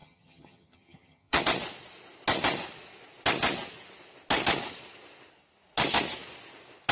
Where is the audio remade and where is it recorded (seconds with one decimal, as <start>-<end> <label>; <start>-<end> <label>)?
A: 0.0-1.4 remade; 1.4-6.9 recorded